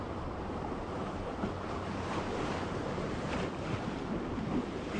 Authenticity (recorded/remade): remade